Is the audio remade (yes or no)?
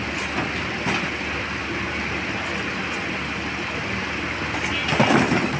no